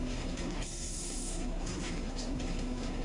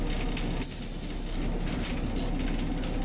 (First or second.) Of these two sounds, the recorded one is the second